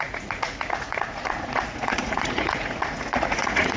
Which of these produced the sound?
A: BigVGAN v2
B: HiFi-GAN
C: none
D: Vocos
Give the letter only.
D